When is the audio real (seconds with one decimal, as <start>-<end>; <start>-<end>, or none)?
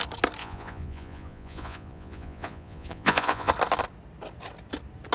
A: 0.0-0.4; 3.5-5.1